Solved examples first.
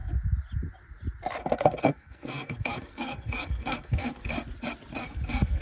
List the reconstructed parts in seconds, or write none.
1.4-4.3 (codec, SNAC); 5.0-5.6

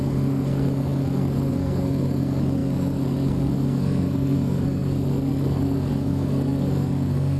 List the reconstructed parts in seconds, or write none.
0.0-7.4 (codec, SNAC)

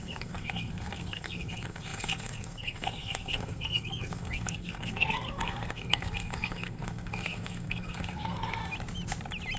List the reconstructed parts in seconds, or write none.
0.0-8.6 (codec, SNAC)

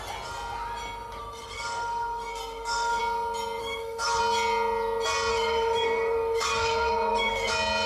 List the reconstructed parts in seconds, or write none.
1.2-3.0 (codec, SNAC); 3.6-4.2; 5.3-7.5

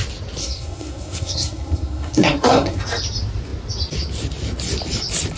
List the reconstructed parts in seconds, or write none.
0.4-2.8 (codec, SNAC)

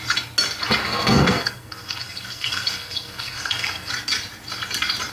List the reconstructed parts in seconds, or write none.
0.8-3.9 (codec, SNAC)

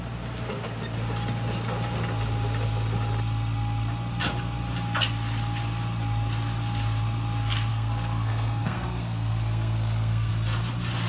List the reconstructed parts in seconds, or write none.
7.7-10.3 (codec, SNAC)

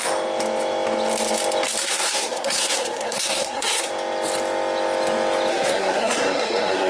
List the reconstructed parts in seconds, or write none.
1.8-3.9 (codec, SNAC); 5.5-6.9